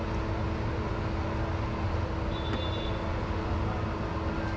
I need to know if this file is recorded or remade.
recorded